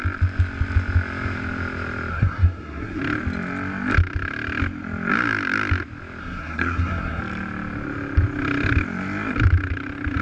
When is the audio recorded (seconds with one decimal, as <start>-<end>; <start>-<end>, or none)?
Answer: 0.0-2.1; 3.0-6.2; 7.2-10.2